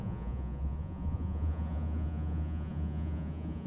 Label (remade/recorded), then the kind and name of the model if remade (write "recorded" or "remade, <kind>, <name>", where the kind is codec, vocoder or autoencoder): remade, vocoder, Vocos